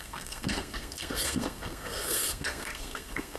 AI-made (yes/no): yes